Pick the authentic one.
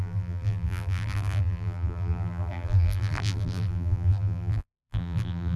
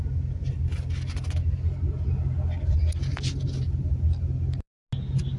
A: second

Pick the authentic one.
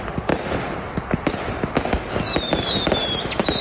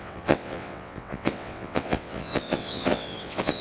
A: first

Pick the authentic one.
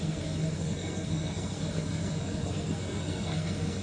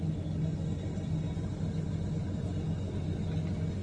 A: second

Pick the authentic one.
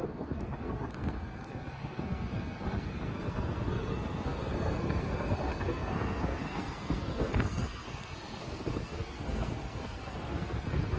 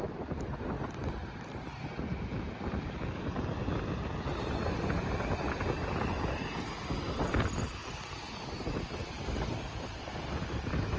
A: second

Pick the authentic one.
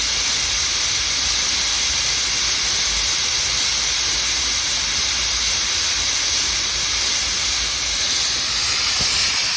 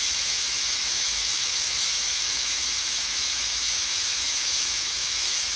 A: first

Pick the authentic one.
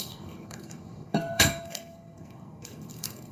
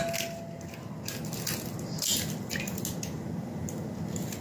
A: second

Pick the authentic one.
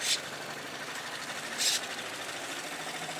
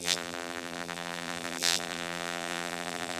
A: first